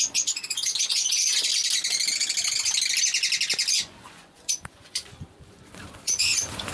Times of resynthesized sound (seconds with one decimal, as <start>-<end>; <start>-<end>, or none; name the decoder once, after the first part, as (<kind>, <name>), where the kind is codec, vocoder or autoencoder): 0.0-1.5 (vocoder, Vocos); 3.7-6.7